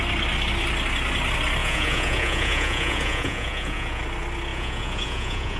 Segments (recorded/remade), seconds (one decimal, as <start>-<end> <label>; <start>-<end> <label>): 0.0-1.6 recorded; 1.6-4.0 remade; 4.0-4.5 recorded; 4.5-5.6 remade